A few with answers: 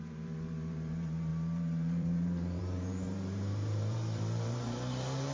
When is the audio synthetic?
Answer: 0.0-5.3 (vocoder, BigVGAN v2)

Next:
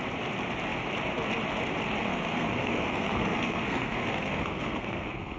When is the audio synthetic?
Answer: 2.0-5.4 (codec, SNAC)